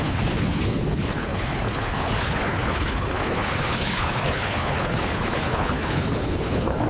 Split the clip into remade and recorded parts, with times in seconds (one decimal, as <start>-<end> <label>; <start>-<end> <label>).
0.0-6.9 remade